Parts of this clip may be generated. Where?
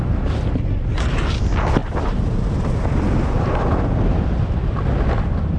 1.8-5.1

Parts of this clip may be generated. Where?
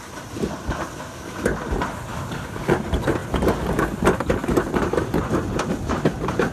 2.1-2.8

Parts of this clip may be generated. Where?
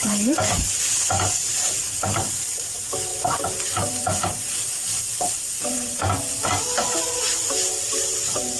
0.0-6.3; 7.0-8.6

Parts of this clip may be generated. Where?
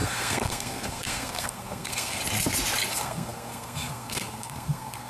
0.0-2.2; 2.9-5.1